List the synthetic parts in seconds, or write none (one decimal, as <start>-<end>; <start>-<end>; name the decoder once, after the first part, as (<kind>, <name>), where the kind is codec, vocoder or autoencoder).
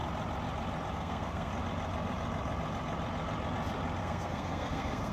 0.9-1.5 (codec, SNAC); 4.0-5.1